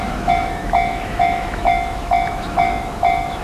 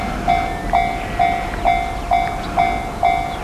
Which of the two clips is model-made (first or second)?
first